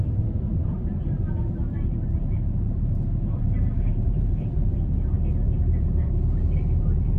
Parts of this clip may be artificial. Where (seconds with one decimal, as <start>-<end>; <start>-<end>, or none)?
0.0-4.7; 5.4-7.2